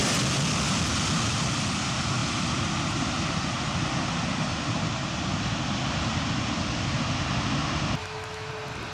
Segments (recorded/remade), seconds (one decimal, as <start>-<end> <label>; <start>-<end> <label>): 0.0-8.0 recorded; 8.0-8.5 remade; 8.5-8.9 recorded